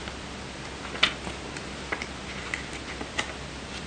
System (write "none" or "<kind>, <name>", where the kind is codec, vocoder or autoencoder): none